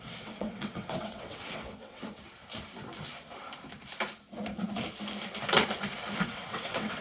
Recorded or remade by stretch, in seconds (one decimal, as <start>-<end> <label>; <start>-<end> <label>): 0.0-2.0 remade; 2.0-6.2 recorded; 6.2-7.0 remade